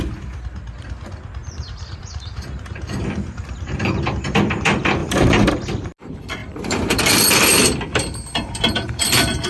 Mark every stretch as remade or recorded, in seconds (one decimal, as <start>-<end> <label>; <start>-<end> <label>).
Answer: 0.0-1.4 recorded; 1.4-4.0 remade; 4.0-5.0 recorded; 5.0-5.5 remade; 5.5-6.4 recorded; 6.4-7.0 remade; 7.0-9.5 recorded